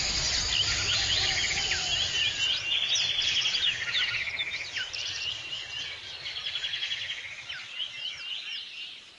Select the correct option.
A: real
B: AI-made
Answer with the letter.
A